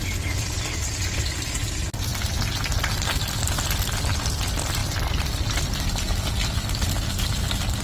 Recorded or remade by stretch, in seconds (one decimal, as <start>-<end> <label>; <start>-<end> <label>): 0.0-7.8 recorded